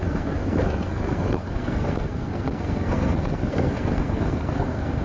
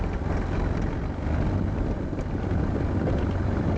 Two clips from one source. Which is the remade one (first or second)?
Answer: first